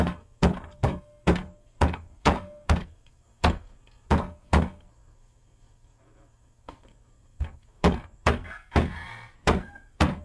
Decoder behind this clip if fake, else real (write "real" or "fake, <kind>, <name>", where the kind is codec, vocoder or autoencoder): fake, codec, SNAC